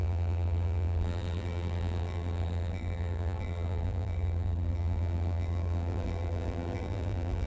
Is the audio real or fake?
fake